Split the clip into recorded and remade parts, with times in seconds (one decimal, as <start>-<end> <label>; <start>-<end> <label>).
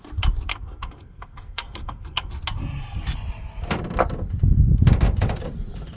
0.0-0.5 recorded; 0.5-2.3 remade; 2.3-6.0 recorded